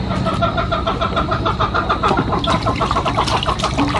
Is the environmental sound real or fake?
real